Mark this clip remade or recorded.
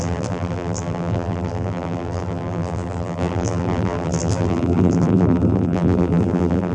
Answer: remade